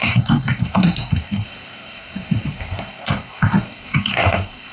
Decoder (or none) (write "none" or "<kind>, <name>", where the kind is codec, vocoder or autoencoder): codec, SNAC